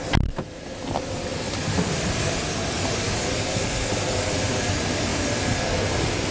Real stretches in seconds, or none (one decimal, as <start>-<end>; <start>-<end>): 0.0-6.3